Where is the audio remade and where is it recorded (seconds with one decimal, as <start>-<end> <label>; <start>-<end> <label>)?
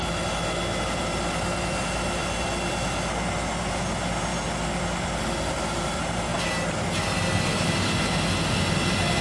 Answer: 0.0-9.2 recorded